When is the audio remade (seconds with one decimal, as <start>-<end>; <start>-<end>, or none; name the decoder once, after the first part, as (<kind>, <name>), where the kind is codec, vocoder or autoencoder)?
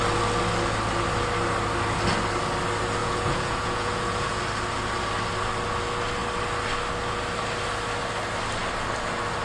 3.0-4.4 (vocoder, Vocos)